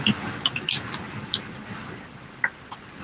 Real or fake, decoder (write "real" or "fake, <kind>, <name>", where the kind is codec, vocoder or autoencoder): real